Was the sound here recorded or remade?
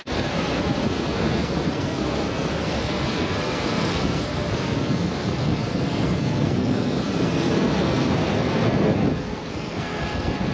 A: remade